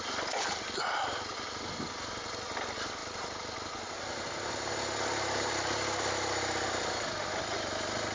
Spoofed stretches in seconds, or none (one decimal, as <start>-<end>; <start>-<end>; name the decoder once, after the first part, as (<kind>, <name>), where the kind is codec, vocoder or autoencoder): none